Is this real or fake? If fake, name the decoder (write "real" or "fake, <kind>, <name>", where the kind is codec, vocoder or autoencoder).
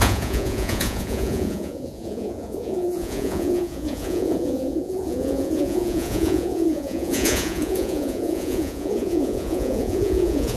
fake, vocoder, Vocos